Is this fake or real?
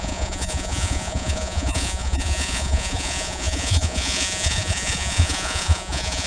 fake